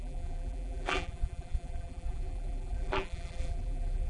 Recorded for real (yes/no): no